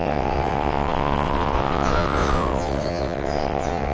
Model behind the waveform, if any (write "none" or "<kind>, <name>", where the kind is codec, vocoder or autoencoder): vocoder, WaveNeXt